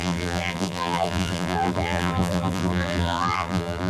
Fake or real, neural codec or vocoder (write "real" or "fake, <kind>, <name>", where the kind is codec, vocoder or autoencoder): fake, vocoder, BigVGAN v2